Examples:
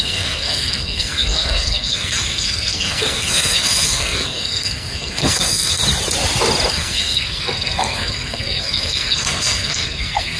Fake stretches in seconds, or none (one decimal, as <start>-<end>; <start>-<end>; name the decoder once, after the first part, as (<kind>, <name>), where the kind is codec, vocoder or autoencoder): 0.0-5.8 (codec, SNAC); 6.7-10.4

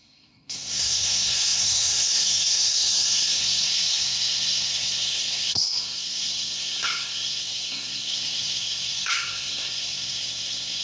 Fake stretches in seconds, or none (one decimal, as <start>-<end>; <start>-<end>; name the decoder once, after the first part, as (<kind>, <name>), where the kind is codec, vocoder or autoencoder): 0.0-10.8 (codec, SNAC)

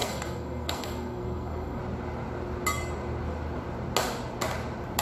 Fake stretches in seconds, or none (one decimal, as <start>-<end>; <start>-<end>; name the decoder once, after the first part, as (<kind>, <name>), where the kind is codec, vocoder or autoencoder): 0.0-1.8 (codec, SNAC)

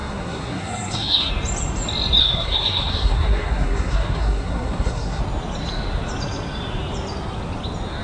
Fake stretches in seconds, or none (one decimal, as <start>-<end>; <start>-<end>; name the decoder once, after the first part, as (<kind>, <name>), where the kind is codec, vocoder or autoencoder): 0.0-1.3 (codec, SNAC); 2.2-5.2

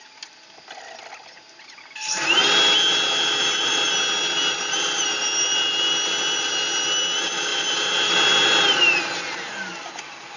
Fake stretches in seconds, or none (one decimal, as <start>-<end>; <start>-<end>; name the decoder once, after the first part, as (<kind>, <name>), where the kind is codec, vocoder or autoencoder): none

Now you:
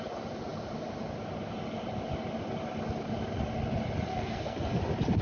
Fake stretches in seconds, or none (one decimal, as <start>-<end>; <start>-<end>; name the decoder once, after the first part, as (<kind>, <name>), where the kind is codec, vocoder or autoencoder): 4.1-4.8 (codec, SNAC)